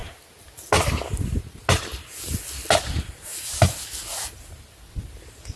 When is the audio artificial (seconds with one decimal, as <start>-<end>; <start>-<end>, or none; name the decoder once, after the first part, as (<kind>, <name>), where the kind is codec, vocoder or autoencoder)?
none